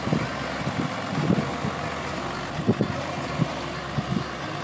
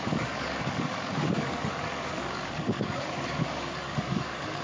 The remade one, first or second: second